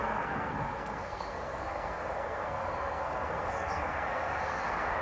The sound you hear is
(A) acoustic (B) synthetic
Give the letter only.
B